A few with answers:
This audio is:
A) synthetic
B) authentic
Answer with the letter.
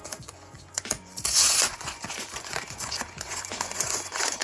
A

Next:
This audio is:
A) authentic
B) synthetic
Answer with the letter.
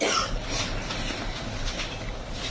A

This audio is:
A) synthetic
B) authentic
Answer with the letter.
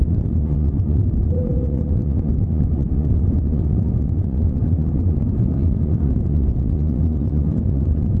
A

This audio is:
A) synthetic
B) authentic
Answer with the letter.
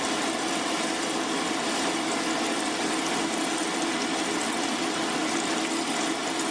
B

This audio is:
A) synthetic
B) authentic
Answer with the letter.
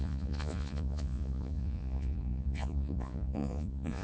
A